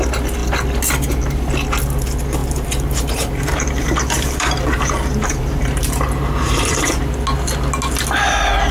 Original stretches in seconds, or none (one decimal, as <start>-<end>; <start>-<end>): 0.0-2.4; 7.0-8.7